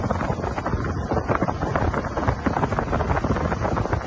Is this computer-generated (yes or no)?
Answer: no